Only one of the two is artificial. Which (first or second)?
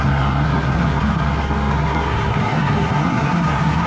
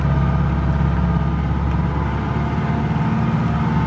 first